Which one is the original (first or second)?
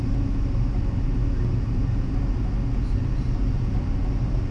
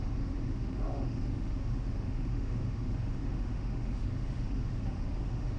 first